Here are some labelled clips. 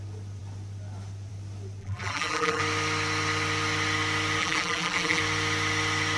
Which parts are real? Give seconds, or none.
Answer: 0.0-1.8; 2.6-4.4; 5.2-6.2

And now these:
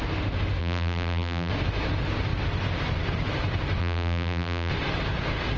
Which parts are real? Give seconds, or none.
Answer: 0.0-0.6; 1.5-3.8; 4.7-5.6

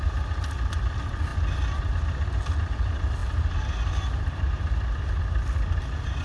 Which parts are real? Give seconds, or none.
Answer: 0.0-6.2

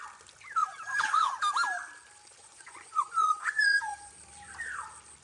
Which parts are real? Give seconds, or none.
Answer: 0.0-0.6; 1.4-2.4; 4.1-5.2

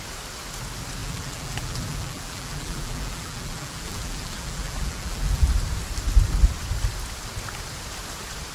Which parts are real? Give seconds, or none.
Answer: 0.0-1.0; 5.5-8.5